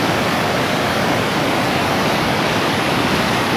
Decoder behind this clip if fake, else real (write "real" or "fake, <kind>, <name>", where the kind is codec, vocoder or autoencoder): fake, codec, DAC